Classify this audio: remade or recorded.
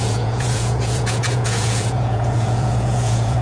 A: remade